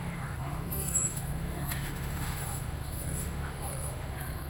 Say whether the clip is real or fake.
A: fake